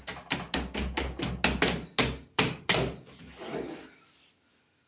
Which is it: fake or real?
real